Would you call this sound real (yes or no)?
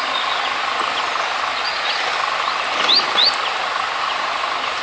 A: yes